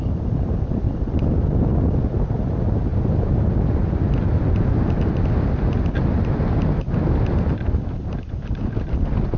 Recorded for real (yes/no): yes